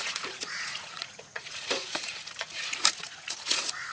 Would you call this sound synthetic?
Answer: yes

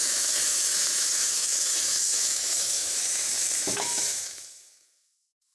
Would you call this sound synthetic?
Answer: yes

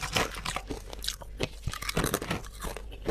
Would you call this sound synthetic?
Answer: no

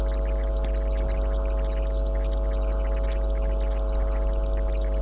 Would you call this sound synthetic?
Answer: no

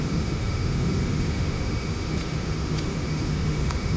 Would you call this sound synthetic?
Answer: yes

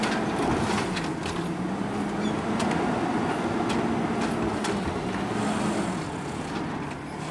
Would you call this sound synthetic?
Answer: no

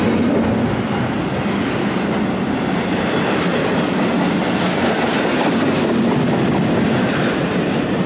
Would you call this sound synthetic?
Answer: no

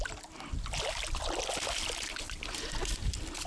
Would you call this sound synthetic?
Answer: no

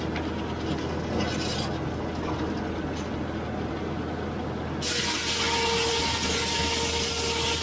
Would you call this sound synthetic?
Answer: no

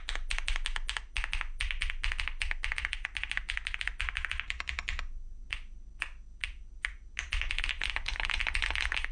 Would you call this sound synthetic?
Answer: no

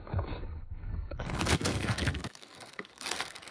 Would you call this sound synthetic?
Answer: yes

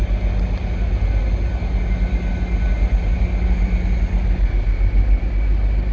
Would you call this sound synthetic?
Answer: no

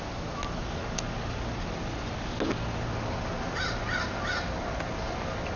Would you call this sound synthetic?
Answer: no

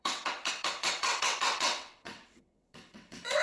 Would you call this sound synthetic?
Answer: yes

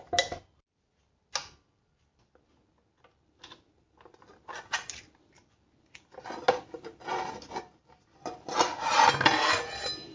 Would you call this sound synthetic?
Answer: no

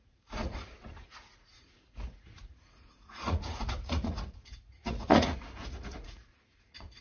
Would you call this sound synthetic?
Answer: yes